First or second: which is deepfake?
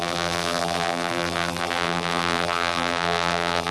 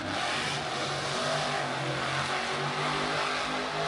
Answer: first